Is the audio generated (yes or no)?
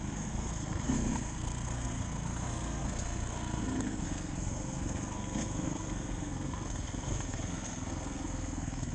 yes